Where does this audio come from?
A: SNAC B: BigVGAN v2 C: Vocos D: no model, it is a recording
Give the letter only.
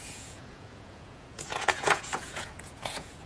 C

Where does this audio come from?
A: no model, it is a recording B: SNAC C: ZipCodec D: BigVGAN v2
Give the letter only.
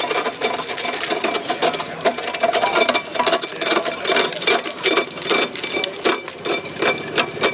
A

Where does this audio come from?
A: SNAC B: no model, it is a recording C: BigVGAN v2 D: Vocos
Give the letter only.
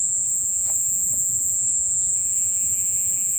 D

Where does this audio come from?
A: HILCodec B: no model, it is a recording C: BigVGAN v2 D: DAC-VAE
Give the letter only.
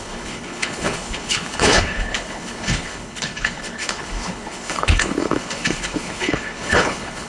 A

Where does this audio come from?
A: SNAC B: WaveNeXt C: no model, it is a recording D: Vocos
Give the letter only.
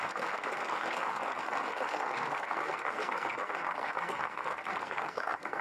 A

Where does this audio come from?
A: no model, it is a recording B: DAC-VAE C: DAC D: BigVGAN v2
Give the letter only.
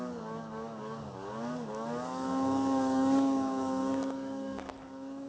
C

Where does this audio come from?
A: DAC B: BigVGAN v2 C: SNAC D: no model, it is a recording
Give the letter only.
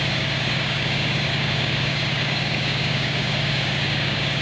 A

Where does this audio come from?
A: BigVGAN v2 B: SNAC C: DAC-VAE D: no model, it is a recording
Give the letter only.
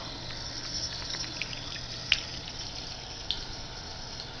D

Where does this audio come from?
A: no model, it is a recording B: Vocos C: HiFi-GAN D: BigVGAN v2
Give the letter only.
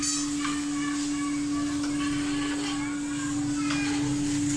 A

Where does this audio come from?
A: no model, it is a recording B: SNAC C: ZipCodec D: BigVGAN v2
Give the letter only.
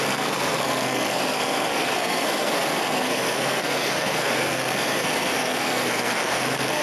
B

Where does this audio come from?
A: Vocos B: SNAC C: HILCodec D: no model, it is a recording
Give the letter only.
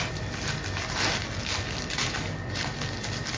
D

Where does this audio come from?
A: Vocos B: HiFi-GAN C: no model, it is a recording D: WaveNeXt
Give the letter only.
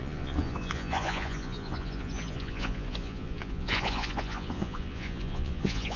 A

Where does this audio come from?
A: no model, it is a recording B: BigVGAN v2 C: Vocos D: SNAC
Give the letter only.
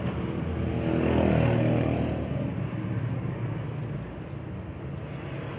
A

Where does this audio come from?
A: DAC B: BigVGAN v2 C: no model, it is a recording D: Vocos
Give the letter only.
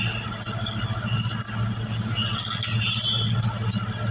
C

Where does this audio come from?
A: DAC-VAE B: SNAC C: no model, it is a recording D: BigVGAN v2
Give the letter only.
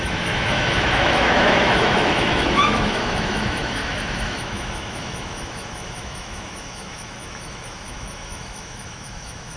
A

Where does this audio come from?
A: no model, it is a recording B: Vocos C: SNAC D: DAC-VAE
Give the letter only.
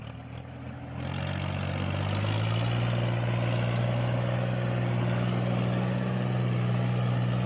A